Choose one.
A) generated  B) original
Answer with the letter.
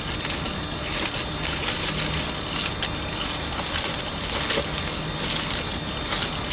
B